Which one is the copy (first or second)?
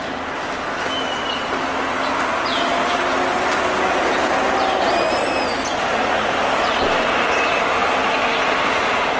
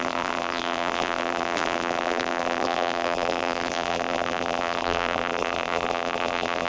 second